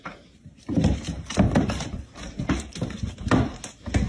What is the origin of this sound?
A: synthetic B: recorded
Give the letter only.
B